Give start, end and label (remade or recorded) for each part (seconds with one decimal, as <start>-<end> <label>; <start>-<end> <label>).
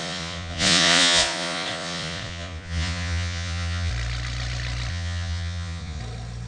0.0-3.9 remade; 3.9-4.9 recorded; 4.9-6.0 remade; 6.0-6.5 recorded